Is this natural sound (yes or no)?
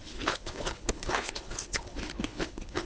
no